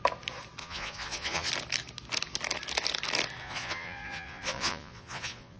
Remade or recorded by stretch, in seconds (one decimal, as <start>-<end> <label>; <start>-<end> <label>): 0.0-0.6 recorded; 0.6-1.5 remade; 1.5-3.4 recorded; 3.4-5.6 remade